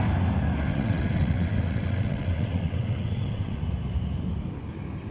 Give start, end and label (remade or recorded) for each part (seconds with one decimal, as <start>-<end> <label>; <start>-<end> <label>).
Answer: 0.0-0.7 recorded; 0.7-3.6 remade; 3.6-5.1 recorded